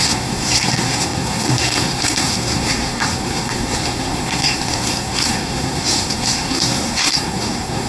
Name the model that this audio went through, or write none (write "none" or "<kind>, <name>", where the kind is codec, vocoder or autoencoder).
codec, SNAC